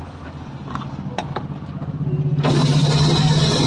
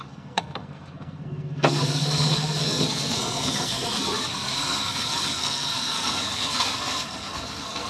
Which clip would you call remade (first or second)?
second